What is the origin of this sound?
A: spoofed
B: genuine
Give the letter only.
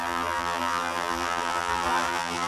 A